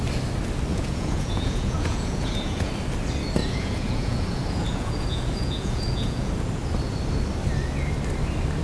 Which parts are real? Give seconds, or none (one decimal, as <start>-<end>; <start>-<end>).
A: 0.0-0.7; 2.7-3.4; 6.3-8.6